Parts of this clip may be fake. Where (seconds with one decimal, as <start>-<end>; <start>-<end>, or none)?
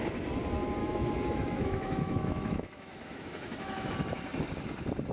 0.8-3.9